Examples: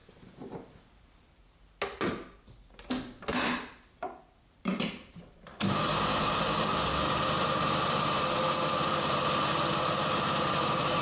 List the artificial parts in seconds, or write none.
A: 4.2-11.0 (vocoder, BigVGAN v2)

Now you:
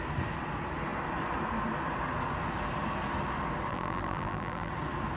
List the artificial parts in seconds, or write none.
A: 3.7-4.7 (vocoder, BigVGAN v2)